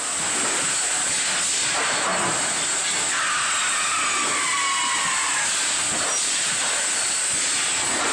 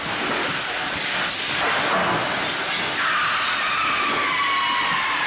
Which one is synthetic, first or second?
second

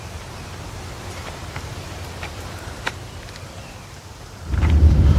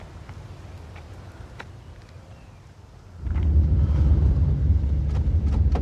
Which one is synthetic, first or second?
first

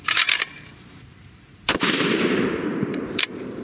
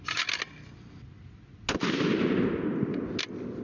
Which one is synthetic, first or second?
first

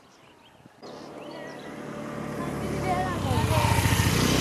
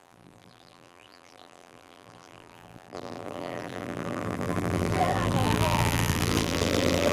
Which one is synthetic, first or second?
second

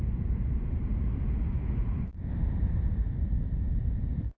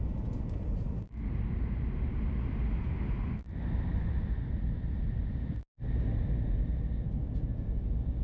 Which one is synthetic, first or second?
first